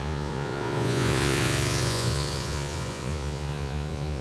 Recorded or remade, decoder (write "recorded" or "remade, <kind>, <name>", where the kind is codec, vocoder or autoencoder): remade, vocoder, Vocos